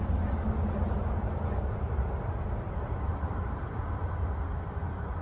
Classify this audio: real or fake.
real